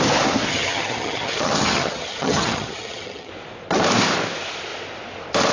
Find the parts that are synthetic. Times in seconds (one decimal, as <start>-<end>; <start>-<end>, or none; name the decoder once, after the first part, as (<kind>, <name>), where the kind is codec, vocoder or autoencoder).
0.5-3.3 (vocoder, HiFi-GAN)